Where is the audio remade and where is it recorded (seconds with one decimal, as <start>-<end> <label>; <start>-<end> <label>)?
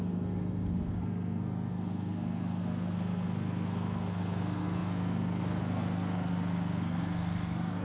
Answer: 0.0-7.8 remade